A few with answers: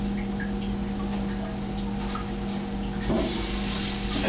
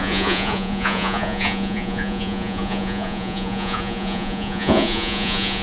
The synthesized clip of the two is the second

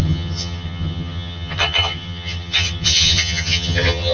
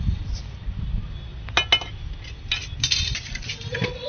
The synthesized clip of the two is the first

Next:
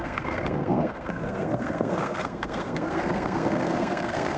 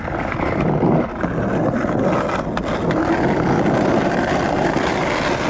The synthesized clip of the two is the first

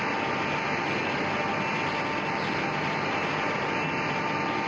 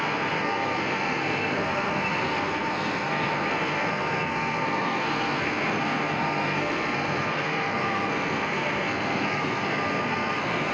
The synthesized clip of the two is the second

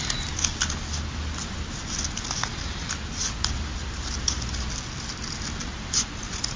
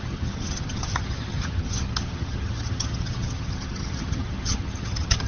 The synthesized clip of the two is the second